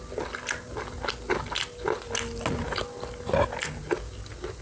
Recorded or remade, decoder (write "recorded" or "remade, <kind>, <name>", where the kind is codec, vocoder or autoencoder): recorded